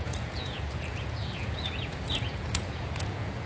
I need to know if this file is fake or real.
fake